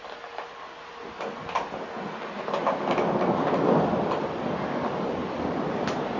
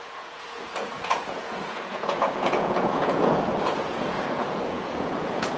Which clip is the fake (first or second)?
second